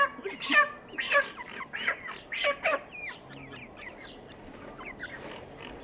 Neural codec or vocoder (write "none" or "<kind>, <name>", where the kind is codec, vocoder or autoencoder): vocoder, BigVGAN v2